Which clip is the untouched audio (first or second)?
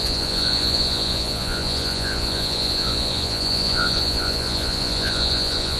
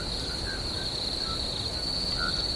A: second